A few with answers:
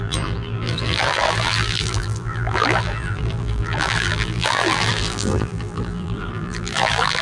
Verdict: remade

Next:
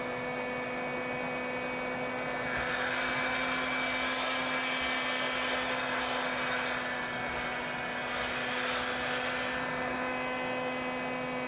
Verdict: recorded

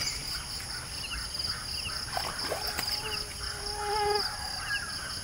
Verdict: recorded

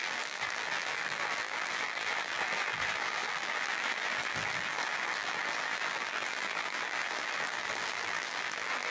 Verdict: remade